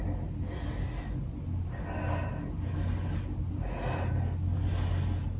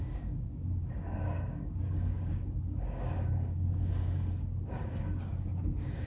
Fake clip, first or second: second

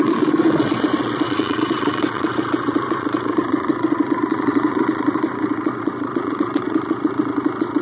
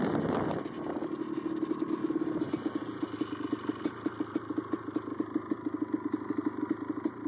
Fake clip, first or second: first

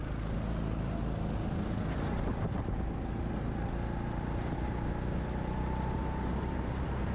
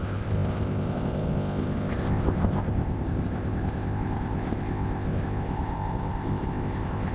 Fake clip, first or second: second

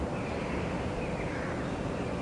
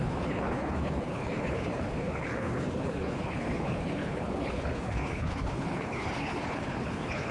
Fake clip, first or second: second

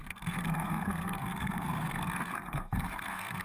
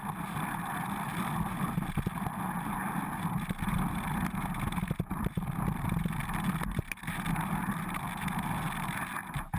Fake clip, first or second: first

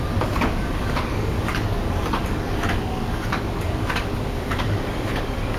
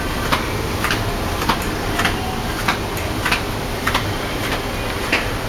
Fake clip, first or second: first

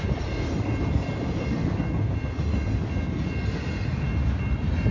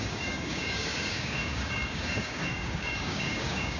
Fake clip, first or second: second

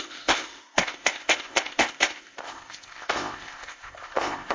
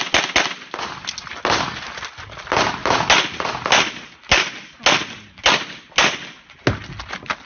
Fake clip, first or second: first